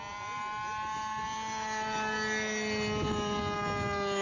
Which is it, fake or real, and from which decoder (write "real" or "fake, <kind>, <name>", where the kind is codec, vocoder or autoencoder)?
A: real